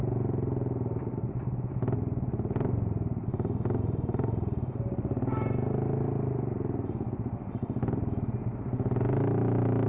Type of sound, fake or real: real